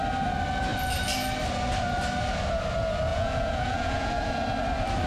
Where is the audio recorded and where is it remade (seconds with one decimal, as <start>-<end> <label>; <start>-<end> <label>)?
0.0-3.1 recorded; 3.1-4.4 remade; 4.4-5.1 recorded